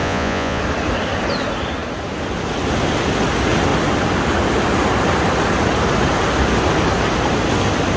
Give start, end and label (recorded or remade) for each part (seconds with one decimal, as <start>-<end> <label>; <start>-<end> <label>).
0.0-0.6 remade; 0.6-8.0 recorded